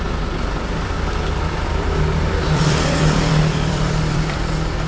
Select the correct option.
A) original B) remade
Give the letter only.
B